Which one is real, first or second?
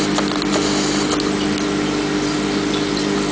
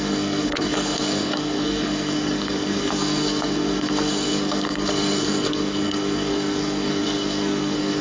first